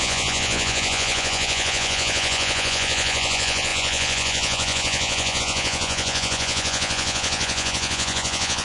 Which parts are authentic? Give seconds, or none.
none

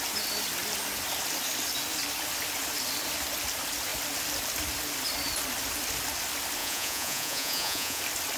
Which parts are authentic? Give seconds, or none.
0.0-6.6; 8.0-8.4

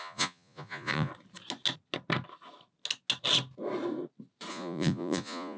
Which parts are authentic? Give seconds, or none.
1.1-4.5

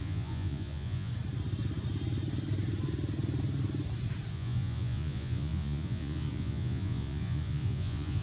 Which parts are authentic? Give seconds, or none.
1.1-4.3